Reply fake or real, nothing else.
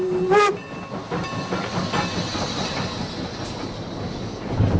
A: real